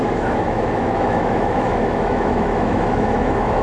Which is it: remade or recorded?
remade